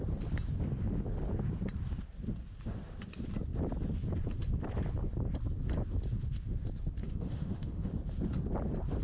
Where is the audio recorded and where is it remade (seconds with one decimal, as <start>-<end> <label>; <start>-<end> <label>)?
0.0-7.0 recorded; 7.0-7.9 remade; 7.9-9.0 recorded